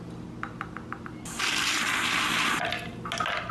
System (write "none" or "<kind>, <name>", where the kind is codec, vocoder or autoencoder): none